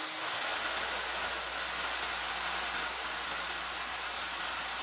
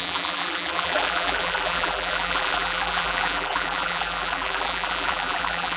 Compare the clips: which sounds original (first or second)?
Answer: first